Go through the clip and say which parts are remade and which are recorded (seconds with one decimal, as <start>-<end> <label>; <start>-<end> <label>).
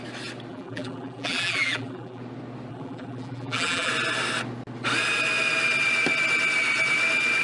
0.0-0.5 recorded; 0.5-2.2 remade; 2.2-2.7 recorded; 2.7-3.9 remade; 3.9-7.4 recorded